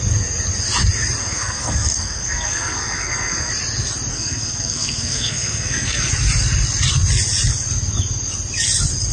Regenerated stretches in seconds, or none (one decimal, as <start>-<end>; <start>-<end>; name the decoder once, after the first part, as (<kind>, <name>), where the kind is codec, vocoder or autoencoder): 1.2-3.5 (codec, SNAC); 4.1-6.1